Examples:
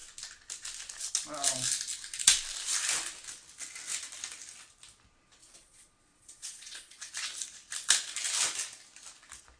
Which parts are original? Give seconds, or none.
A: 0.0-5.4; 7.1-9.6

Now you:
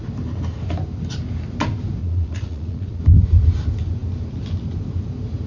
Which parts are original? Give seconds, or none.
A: 0.0-2.0; 3.0-5.5

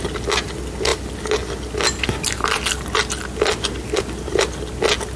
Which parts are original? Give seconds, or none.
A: 0.0-5.2